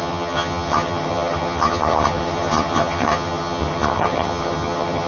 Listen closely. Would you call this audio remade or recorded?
remade